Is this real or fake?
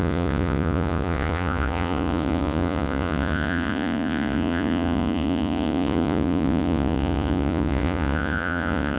fake